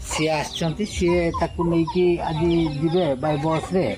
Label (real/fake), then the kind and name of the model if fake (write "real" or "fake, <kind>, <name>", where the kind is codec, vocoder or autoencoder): real